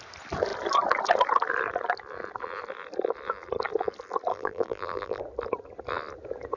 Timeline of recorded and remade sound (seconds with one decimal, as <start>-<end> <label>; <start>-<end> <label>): 0.0-4.3 recorded; 4.3-5.2 remade; 5.2-6.6 recorded